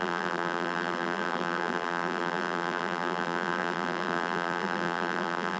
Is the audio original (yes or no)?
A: no